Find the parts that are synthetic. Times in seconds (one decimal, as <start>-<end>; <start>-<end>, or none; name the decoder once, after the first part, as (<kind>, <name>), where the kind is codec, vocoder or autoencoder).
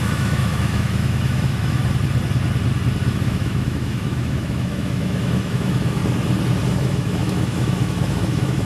0.0-1.8 (autoencoder, DAC-VAE); 3.1-6.0; 6.8-8.7